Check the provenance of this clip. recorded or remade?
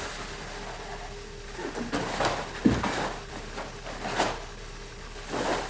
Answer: recorded